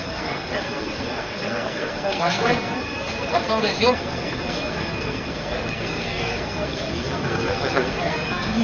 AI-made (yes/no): yes